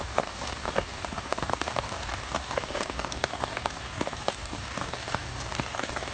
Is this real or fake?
fake